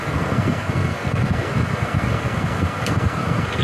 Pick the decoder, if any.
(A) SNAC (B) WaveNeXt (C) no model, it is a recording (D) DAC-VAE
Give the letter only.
A